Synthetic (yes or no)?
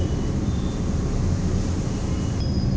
no